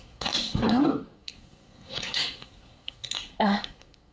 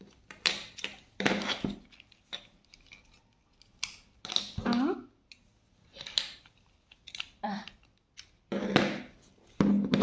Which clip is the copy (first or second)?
first